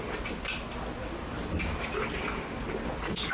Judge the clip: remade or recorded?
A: recorded